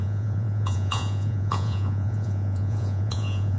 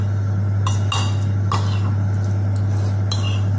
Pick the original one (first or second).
second